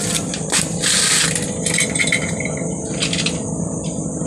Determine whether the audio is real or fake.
fake